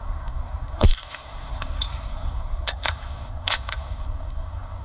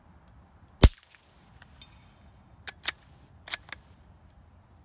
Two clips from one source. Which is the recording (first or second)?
second